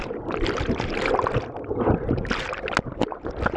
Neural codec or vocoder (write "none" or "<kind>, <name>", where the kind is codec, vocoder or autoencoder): none